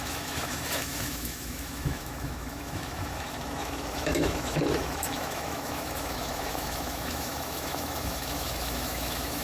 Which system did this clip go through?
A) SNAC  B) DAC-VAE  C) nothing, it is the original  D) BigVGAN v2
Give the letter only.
B